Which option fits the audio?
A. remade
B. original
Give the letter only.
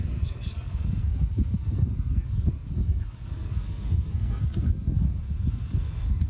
A